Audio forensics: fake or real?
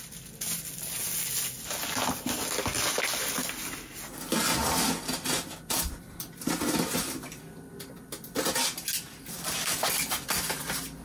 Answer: real